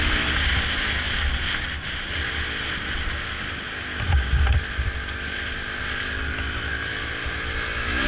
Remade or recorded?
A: recorded